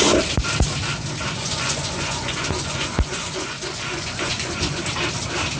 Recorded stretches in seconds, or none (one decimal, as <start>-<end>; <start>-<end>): 0.0-1.4; 4.8-5.6